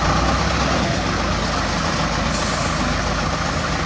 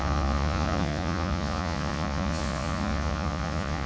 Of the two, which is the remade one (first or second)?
second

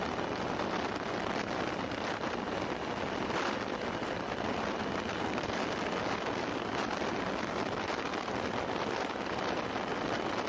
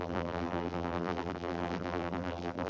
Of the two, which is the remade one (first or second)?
second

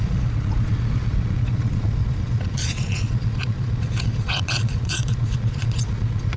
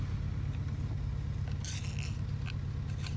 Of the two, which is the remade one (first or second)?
first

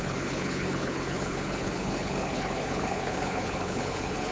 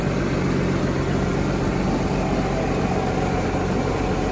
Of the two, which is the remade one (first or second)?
first